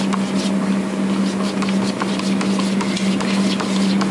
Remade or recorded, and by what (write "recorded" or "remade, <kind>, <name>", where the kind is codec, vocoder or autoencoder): recorded